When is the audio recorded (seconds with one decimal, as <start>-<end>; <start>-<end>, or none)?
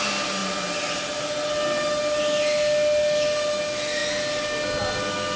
0.0-5.4